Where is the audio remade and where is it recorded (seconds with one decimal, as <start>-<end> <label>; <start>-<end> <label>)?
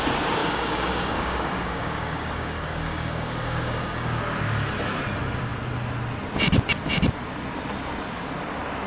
0.0-0.4 recorded; 0.4-4.2 remade; 4.2-8.9 recorded